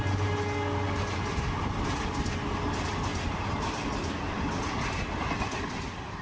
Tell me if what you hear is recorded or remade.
recorded